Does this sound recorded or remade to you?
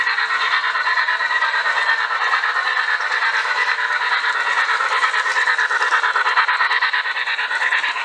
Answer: recorded